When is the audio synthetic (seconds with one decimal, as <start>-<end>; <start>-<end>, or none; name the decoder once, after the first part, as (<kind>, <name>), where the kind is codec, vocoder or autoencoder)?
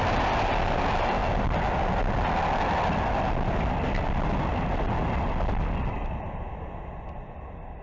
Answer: none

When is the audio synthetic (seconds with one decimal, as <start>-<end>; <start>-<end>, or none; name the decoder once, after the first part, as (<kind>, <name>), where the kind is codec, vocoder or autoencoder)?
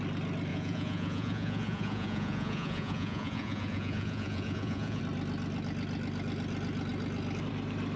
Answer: 0.5-5.0 (vocoder, Vocos)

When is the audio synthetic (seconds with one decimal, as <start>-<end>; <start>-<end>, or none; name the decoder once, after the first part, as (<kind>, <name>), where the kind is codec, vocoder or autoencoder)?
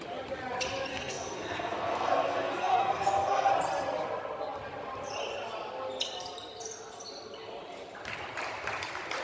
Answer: 0.9-3.5 (codec, SNAC)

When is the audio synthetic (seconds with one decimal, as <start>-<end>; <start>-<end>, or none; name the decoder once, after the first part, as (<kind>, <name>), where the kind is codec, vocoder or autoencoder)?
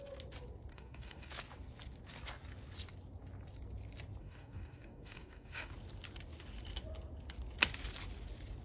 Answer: 0.7-1.3 (codec, DAC); 4.2-5.7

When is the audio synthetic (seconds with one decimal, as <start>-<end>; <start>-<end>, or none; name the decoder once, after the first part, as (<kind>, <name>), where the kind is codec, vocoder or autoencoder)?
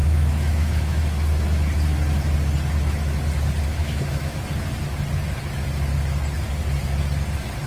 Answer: 0.0-1.0 (autoencoder, DAC-VAE); 3.8-4.4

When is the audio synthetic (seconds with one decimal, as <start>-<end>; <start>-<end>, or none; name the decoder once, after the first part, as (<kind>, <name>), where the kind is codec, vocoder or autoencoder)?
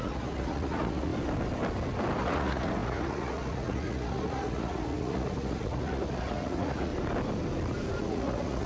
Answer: 0.0-1.1 (vocoder, Vocos); 2.2-6.9; 8.0-8.7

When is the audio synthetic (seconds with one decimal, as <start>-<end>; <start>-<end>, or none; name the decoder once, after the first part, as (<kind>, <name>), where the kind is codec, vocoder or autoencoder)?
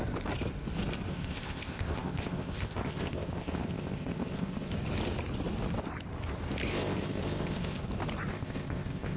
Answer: 1.1-4.7 (codec, ZipCodec); 6.7-7.8; 8.3-9.2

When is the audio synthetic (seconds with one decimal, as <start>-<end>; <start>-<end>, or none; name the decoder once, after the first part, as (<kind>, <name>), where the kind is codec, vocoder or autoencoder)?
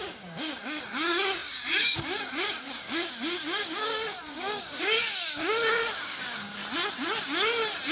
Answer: 0.0-6.6 (codec, DAC)